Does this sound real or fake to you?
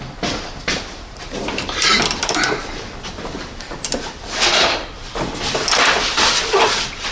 fake